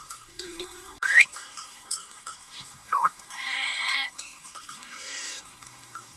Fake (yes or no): yes